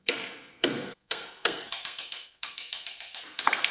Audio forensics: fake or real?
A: fake